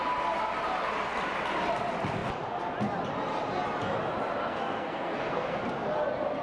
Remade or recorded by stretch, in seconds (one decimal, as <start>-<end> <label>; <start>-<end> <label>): 0.0-4.4 recorded; 4.4-5.6 remade; 5.6-6.4 recorded